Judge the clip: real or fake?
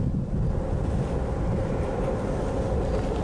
real